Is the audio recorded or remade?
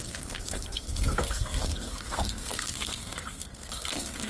remade